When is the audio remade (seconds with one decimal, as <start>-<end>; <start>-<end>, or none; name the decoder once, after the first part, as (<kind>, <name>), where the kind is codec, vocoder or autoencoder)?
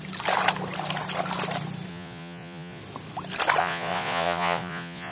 1.9-2.8 (vocoder, Vocos); 3.6-5.1